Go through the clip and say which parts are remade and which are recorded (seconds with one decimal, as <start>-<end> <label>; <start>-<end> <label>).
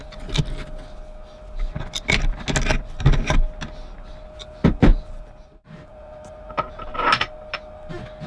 0.0-4.9 recorded; 4.9-7.1 remade; 7.1-8.3 recorded